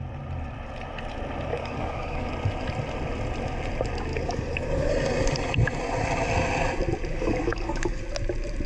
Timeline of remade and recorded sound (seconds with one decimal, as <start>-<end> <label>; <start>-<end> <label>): 0.0-1.5 recorded; 1.5-2.3 remade; 2.3-4.1 recorded; 4.1-4.9 remade; 4.9-7.1 recorded; 7.1-8.0 remade; 8.0-8.7 recorded